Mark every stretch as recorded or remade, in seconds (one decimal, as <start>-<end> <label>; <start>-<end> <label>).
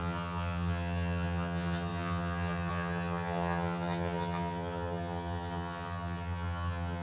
0.0-7.0 remade